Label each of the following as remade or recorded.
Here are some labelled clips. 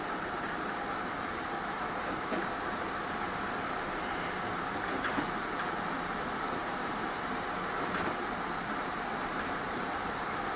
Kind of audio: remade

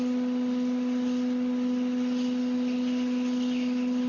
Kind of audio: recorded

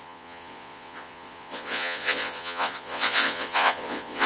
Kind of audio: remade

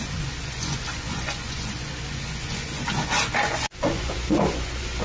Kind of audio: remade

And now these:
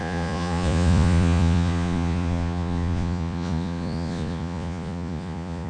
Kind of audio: remade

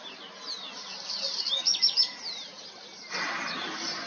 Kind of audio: recorded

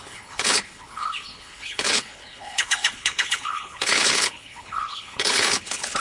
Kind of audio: remade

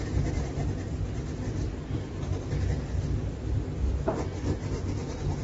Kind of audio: recorded